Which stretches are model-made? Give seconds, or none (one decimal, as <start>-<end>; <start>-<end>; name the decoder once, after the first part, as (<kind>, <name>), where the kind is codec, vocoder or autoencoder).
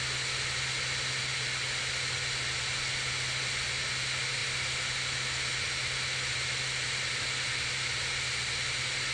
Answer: none